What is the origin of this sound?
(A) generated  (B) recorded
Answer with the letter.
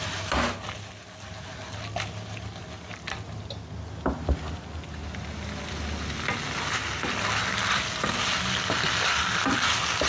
B